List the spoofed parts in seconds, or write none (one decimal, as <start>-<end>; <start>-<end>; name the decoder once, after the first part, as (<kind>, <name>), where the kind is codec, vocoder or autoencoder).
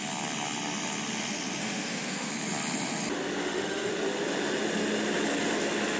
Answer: 1.6-2.3 (autoencoder, DAC-VAE); 3.4-3.9